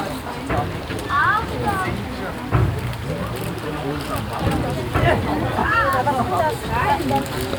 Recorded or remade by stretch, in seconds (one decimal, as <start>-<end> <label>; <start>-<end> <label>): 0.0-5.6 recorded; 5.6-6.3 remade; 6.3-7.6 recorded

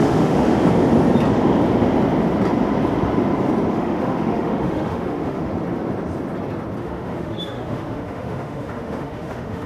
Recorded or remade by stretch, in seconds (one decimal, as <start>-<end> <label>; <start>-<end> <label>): 0.0-0.5 remade; 0.5-3.7 recorded; 3.7-5.5 remade; 5.5-6.8 recorded; 6.8-9.7 remade

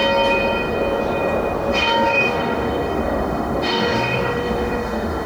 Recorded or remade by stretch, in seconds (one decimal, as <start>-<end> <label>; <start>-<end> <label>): 0.0-1.7 recorded; 1.7-5.3 remade

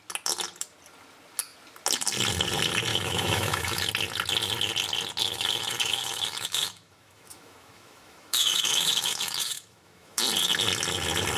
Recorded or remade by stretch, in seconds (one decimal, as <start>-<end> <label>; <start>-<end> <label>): 0.0-2.9 recorded; 2.9-3.9 remade; 3.9-5.2 recorded; 5.2-10.2 remade; 10.2-11.4 recorded

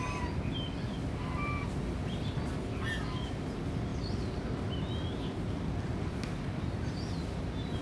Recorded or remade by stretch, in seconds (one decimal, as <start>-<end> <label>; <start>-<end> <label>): 0.0-7.8 recorded